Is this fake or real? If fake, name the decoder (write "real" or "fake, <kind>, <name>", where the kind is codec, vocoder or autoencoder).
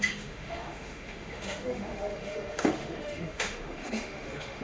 fake, autoencoder, DAC-VAE